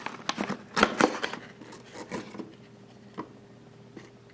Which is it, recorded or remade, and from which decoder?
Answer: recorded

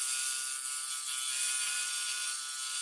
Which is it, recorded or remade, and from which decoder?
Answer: recorded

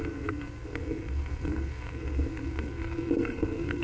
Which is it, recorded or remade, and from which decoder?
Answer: remade, codec, SNAC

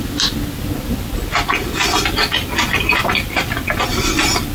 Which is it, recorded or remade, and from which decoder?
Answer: recorded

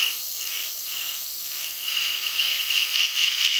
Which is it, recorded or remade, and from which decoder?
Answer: remade, codec, SNAC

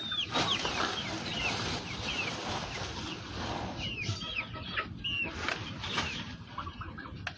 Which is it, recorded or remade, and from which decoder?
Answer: recorded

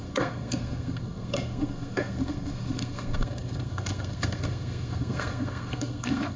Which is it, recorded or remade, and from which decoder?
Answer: remade, codec, SNAC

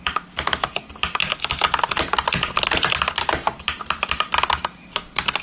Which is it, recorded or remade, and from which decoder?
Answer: recorded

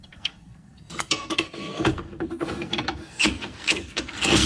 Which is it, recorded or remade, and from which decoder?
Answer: remade, codec, SNAC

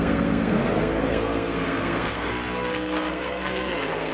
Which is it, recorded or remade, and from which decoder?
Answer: remade, codec, SNAC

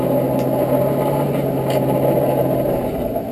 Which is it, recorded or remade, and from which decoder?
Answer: recorded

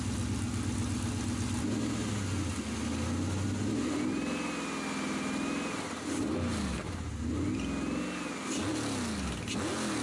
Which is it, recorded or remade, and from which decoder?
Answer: recorded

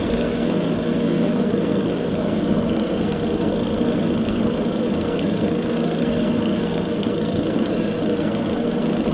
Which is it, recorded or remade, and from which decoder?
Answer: remade, codec, SNAC